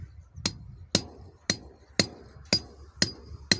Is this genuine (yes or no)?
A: yes